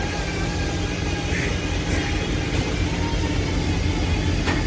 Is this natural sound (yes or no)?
yes